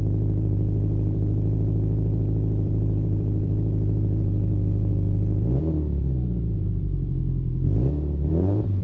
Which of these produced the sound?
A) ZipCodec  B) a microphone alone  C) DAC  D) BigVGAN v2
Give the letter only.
D